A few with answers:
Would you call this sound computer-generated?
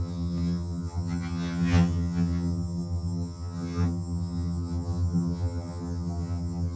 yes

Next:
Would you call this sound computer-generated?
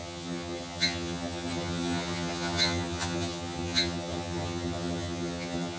yes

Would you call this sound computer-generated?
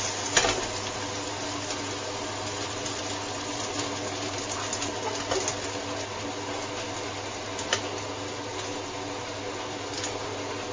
no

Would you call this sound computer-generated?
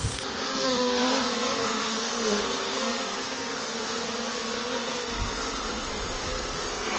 yes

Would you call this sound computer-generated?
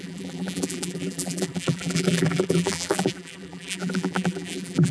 yes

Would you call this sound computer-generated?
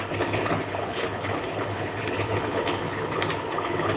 yes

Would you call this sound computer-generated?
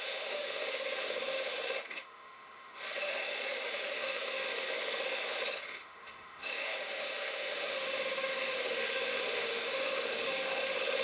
yes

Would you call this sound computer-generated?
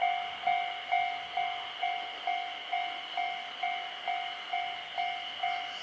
no